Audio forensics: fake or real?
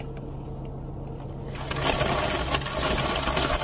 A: real